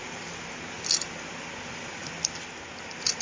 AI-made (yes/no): no